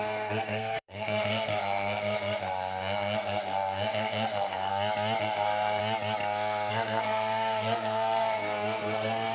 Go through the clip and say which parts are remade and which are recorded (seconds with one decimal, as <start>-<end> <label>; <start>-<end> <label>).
0.0-4.7 remade; 4.7-5.2 recorded; 5.2-5.8 remade; 5.8-6.7 recorded; 6.7-9.3 remade